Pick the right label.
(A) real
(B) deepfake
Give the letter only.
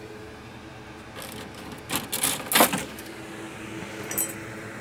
A